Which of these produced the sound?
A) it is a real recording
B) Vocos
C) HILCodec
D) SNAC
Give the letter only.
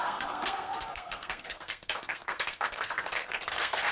D